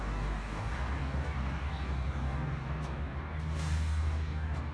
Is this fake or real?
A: fake